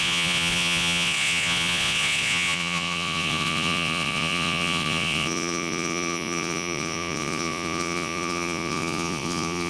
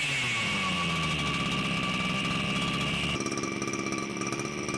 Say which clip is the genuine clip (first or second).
second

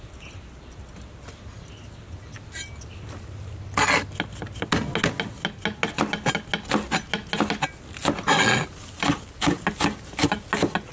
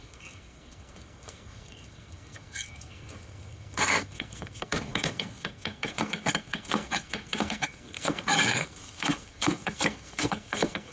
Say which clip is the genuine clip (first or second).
first